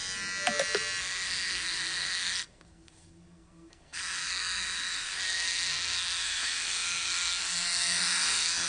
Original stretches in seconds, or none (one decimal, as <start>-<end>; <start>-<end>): 0.0-1.0